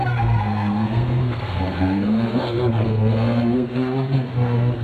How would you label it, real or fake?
fake